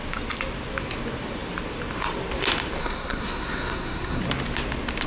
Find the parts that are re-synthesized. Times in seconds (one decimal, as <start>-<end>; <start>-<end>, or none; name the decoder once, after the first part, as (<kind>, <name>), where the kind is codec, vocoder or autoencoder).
2.8-4.2 (codec, SNAC)